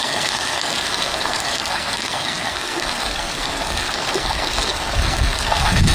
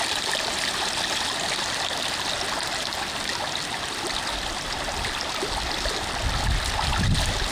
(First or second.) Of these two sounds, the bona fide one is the second